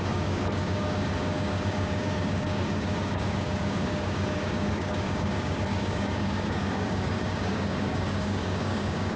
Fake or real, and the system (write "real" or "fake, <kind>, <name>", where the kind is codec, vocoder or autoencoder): fake, codec, DAC